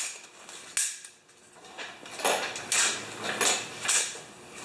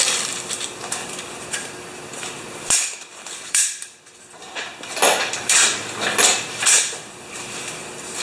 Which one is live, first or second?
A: first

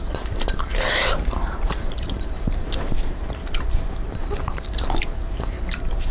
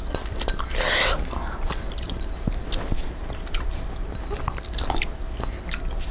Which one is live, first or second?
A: second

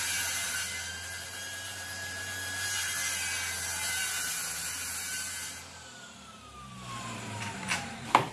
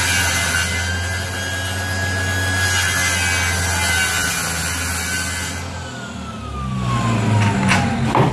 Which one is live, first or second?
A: second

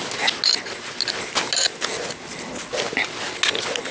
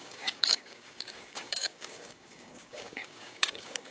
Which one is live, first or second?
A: first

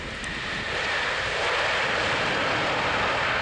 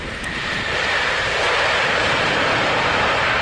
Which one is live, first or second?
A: first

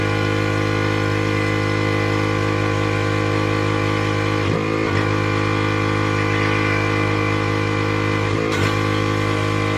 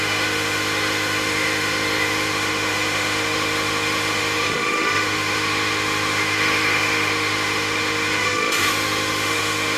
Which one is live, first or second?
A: first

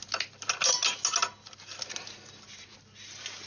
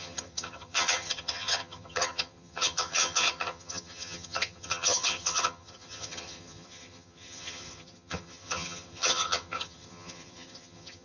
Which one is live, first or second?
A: first